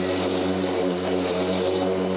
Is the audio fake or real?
real